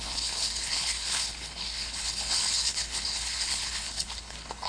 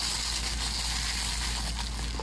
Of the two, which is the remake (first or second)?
first